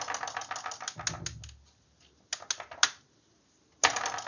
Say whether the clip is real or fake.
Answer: real